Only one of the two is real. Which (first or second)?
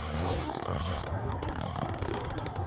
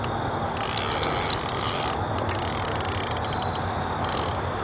second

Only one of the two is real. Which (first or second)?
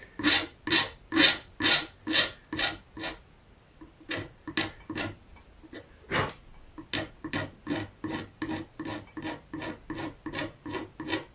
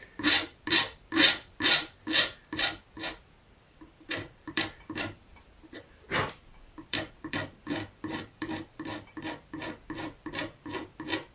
first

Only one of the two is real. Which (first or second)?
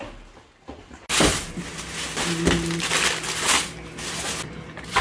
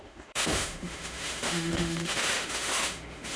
first